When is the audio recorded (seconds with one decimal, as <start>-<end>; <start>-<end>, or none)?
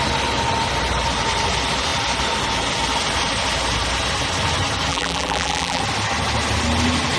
0.0-4.9; 5.8-7.2